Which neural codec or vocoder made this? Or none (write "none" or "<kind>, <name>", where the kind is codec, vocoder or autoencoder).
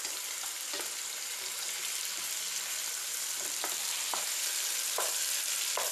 vocoder, BigVGAN v2